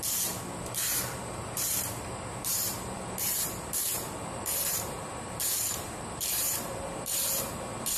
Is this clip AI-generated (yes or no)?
yes